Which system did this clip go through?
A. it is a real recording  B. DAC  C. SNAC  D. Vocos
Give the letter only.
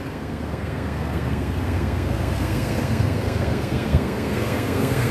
C